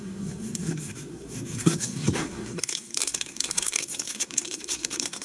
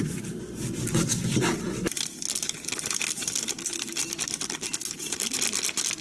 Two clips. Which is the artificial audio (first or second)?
first